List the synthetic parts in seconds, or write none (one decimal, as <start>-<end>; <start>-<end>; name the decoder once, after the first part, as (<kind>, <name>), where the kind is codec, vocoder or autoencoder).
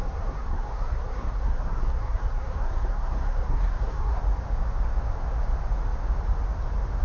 0.0-4.2 (codec, SNAC)